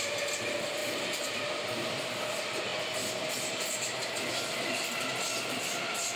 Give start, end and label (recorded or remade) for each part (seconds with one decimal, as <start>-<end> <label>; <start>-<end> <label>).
0.0-6.2 recorded